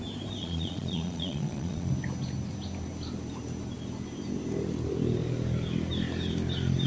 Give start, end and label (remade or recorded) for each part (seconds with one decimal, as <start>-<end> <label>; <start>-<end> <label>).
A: 0.0-0.4 recorded; 0.4-1.9 remade; 1.9-6.9 recorded